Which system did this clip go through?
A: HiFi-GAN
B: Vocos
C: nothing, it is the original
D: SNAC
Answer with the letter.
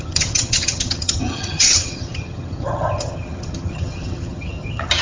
A